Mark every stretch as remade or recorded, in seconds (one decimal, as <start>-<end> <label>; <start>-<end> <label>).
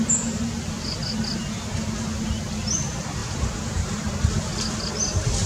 0.0-5.5 recorded